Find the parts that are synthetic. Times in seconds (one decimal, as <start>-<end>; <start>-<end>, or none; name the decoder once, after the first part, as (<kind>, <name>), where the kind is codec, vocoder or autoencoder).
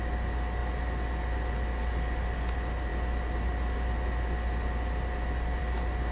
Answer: none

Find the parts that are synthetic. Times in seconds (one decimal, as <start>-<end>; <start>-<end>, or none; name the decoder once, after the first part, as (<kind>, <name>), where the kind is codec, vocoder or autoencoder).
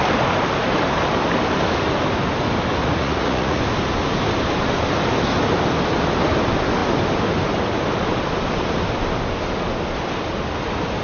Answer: 2.8-3.6 (vocoder, Vocos)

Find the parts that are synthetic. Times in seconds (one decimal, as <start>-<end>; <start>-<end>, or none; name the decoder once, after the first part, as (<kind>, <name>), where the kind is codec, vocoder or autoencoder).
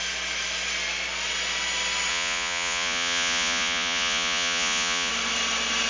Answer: 2.1-5.1 (vocoder, Vocos)